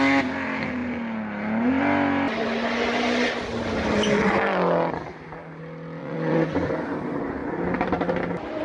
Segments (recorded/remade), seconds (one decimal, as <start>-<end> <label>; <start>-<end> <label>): 0.0-6.0 recorded; 6.0-6.7 remade; 6.7-8.6 recorded